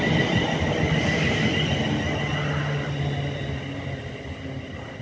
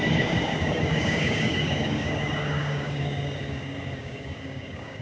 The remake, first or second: second